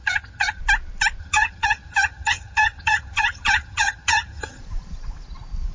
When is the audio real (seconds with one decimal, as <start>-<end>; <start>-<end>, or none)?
0.6-1.2; 4.6-5.7